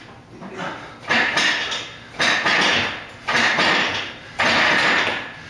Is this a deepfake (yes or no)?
no